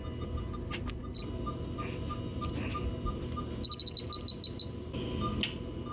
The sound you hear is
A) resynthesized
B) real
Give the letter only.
B